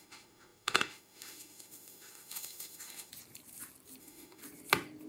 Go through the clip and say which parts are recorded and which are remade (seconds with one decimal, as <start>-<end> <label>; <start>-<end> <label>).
0.0-3.1 remade; 3.1-4.0 recorded; 4.0-4.4 remade; 4.4-5.1 recorded

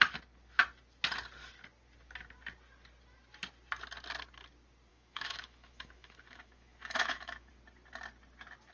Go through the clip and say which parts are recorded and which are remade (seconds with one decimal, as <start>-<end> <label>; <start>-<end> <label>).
0.0-4.9 recorded; 4.9-7.5 remade; 7.5-8.7 recorded

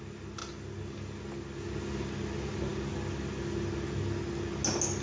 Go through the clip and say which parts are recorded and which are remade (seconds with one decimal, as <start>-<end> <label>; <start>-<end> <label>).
0.0-5.0 recorded

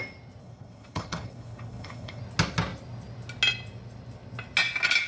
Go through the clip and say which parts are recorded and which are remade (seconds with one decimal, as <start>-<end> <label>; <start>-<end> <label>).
0.0-0.4 recorded; 0.4-2.2 remade; 2.2-5.1 recorded

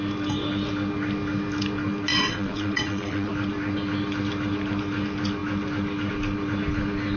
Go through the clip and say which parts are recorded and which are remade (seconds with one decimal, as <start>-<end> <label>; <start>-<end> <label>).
0.0-2.1 recorded; 2.1-3.3 remade; 3.3-7.2 recorded

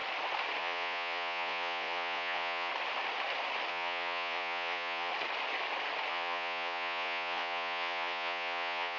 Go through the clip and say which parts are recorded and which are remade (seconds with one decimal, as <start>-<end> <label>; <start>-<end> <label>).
0.0-0.6 recorded; 0.6-2.7 remade; 2.7-3.7 recorded; 3.7-5.1 remade; 5.1-6.1 recorded; 6.1-9.0 remade